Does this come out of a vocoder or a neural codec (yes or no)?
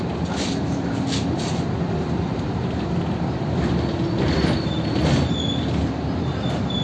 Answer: no